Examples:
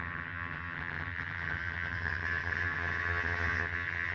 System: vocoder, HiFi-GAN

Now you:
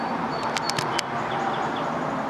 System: none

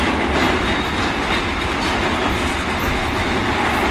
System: none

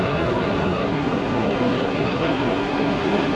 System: codec, SNAC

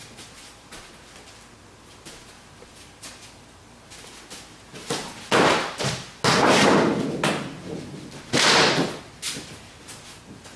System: none